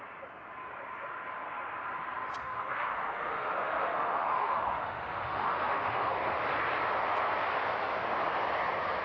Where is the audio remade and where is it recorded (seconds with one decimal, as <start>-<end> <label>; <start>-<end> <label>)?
0.0-2.4 recorded; 2.4-6.1 remade; 6.1-9.0 recorded